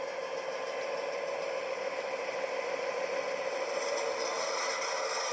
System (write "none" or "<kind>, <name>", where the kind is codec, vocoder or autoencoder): none